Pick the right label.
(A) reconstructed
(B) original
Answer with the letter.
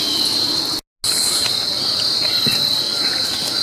B